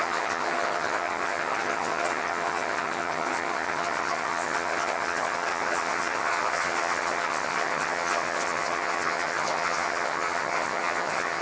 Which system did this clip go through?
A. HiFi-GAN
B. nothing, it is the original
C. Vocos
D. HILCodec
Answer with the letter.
A